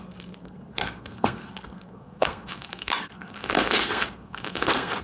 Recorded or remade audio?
remade